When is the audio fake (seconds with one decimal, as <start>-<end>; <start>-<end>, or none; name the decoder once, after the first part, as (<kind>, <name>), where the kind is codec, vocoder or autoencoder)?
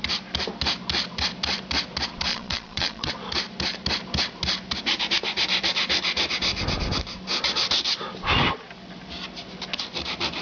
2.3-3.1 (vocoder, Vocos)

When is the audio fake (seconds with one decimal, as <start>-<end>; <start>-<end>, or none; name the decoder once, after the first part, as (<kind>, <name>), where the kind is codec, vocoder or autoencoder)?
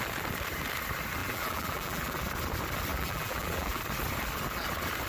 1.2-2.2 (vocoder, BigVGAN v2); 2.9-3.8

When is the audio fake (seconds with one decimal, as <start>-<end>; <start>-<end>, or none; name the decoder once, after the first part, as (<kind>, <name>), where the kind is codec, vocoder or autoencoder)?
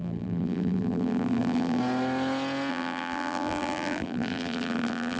0.0-1.8 (vocoder, BigVGAN v2); 2.7-5.2